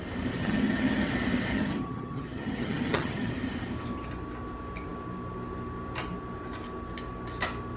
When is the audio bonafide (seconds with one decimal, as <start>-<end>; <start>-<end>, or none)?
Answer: 0.0-0.4; 1.1-1.5; 3.3-7.8